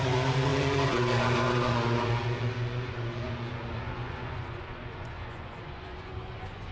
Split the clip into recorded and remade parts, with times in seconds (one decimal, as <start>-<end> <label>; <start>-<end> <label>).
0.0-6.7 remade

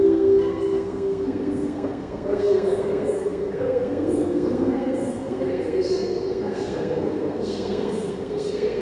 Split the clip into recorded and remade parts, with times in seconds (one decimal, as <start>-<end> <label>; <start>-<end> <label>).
0.0-8.8 remade

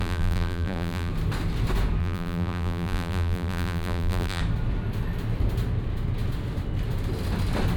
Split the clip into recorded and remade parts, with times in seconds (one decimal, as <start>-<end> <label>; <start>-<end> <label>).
0.0-1.1 remade; 1.1-2.0 recorded; 2.0-4.4 remade; 4.4-7.8 recorded

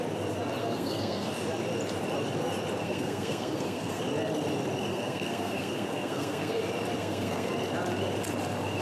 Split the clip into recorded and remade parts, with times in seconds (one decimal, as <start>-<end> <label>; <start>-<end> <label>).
0.0-0.6 recorded; 0.6-1.3 remade; 1.3-2.8 recorded; 2.8-4.0 remade; 4.0-4.9 recorded; 4.9-6.6 remade; 6.6-7.0 recorded; 7.0-7.5 remade; 7.5-8.8 recorded